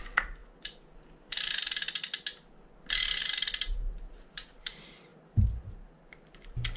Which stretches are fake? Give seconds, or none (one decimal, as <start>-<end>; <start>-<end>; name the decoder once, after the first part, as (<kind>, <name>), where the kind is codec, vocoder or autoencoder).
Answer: none